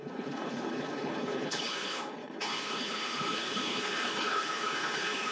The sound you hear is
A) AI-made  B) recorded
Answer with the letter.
A